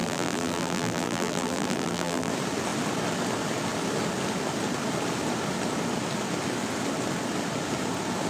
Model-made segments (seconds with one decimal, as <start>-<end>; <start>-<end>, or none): 0.0-2.3